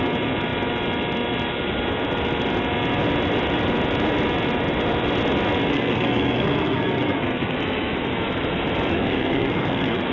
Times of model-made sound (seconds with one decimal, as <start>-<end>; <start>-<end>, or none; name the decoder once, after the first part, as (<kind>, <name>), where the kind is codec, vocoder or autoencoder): 5.7-7.6 (codec, SNAC); 8.9-10.1